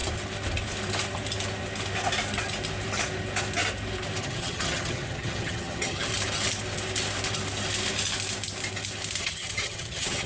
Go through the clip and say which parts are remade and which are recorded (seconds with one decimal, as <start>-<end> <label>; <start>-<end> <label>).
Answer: 0.0-4.2 recorded; 4.2-6.1 remade; 6.1-9.2 recorded; 9.2-10.3 remade

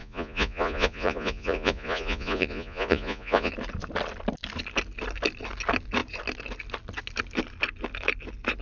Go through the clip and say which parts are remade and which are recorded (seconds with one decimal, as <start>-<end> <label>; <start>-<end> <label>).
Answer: 0.0-3.5 remade; 3.5-8.6 recorded

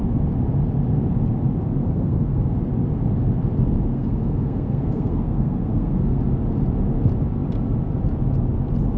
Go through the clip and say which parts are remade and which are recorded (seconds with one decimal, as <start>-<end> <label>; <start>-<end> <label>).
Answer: 0.0-1.8 recorded; 1.8-2.4 remade; 2.4-3.9 recorded; 3.9-6.2 remade; 6.2-9.0 recorded